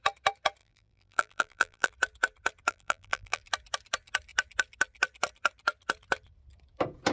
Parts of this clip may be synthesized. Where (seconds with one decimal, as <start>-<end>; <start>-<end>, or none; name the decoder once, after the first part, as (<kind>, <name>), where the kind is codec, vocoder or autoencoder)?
0.6-1.9 (vocoder, BigVGAN v2); 2.7-3.4

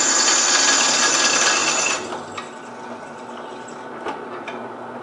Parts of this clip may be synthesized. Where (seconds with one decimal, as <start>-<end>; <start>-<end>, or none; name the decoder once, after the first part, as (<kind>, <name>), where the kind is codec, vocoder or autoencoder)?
none